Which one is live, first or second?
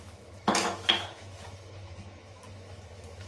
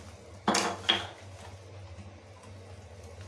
second